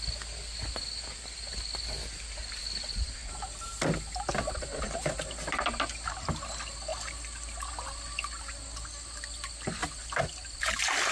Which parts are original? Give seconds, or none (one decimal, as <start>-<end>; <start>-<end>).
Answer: 0.0-11.1

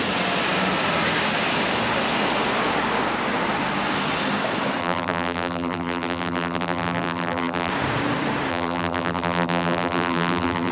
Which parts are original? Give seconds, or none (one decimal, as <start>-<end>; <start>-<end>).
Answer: 0.0-4.8; 7.7-8.5

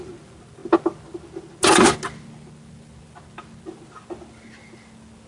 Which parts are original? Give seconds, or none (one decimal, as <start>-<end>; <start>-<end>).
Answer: 0.0-5.3

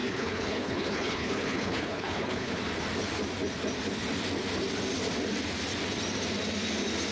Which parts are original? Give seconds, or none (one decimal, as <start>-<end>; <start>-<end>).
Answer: 2.6-7.1

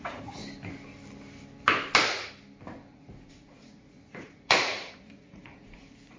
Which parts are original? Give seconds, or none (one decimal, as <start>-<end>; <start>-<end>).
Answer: 0.4-2.9

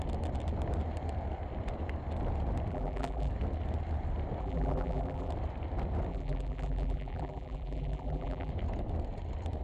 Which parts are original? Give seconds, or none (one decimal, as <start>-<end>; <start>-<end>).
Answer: 0.0-2.7; 3.3-4.4; 5.3-6.1; 8.5-9.6

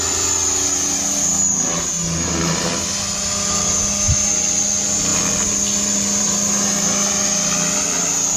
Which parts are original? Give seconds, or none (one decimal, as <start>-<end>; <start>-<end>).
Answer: 0.0-8.4